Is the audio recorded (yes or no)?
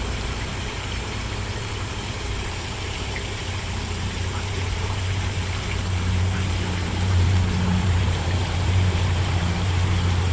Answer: no